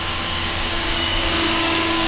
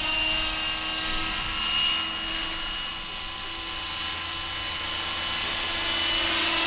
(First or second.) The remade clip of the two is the first